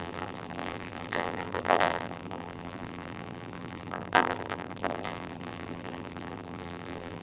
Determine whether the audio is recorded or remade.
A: remade